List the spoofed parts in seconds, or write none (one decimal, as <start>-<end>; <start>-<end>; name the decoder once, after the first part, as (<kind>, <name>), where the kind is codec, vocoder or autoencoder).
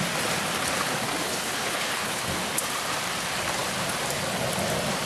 1.2-2.2 (codec, HILCodec)